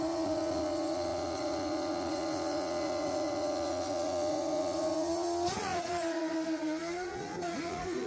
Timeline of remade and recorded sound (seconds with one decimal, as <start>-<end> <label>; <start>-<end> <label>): 0.0-8.1 remade